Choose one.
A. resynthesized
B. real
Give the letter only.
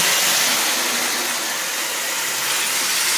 B